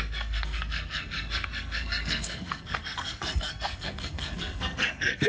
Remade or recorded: remade